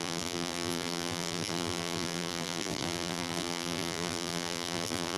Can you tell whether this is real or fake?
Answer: fake